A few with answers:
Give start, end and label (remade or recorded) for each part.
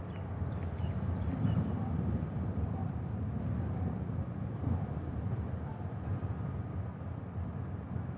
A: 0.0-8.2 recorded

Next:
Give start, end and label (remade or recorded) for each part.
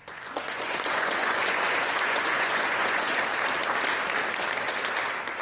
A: 0.0-3.2 remade; 3.2-5.4 recorded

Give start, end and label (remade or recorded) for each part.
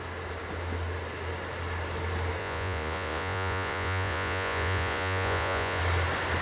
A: 0.0-2.4 recorded; 2.4-5.8 remade; 5.8-6.4 recorded